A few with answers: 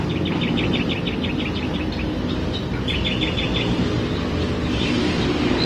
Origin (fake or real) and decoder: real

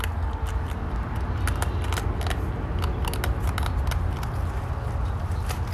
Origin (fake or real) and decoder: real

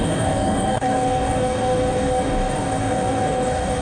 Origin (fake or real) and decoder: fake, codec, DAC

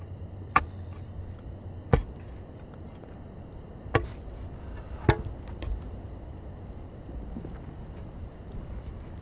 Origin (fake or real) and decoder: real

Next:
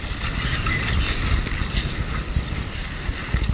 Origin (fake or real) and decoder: real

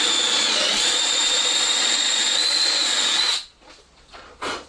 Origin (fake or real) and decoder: fake, vocoder, Vocos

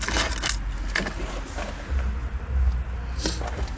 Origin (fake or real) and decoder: real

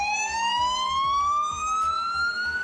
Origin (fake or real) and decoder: real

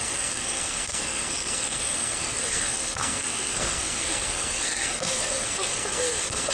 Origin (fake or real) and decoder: fake, codec, SNAC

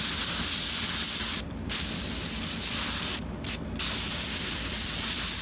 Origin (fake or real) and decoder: real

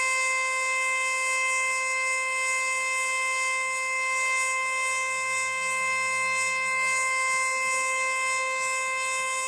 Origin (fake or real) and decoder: real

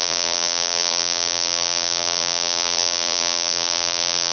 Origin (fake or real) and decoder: fake, vocoder, BigVGAN v2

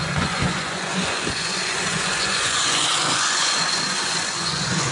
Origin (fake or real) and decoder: fake, vocoder, Vocos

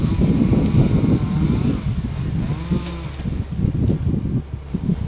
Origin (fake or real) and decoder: real